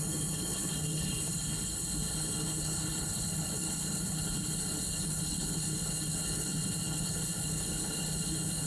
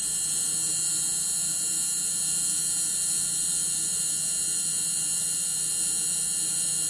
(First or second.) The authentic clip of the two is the second